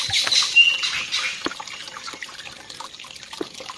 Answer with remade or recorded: recorded